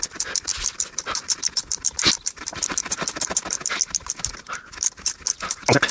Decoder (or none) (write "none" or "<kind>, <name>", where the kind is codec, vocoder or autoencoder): none